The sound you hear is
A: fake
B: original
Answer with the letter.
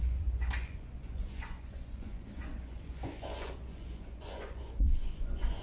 A